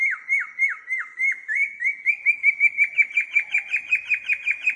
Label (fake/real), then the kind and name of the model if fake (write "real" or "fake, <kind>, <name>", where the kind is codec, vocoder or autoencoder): real